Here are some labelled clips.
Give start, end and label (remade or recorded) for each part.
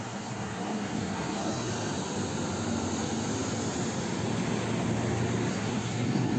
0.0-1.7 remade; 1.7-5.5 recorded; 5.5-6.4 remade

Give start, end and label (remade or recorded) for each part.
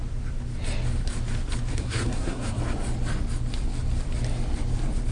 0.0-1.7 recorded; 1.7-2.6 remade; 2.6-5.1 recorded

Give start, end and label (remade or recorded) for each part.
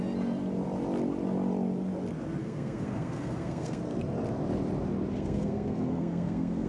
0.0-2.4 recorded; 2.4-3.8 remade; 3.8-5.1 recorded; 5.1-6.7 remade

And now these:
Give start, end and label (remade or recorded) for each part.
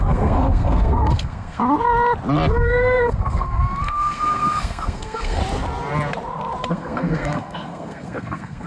0.0-1.6 remade; 1.6-2.5 recorded; 2.5-5.4 remade; 5.4-6.7 recorded; 6.7-8.7 remade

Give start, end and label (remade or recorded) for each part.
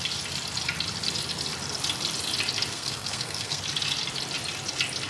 0.0-2.7 recorded; 2.7-3.6 remade; 3.6-5.1 recorded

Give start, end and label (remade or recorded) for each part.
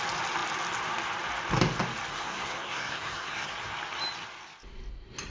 0.0-2.1 recorded; 2.1-3.5 remade; 3.5-5.3 recorded